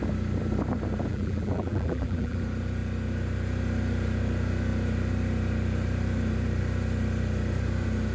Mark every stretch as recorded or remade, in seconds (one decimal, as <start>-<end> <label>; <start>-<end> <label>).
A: 0.0-1.1 recorded; 1.1-2.4 remade; 2.4-8.1 recorded